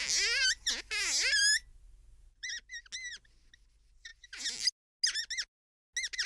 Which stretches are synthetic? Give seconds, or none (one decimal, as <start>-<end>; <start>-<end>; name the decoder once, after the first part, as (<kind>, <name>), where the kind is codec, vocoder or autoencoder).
1.7-2.5 (vocoder, BigVGAN v2)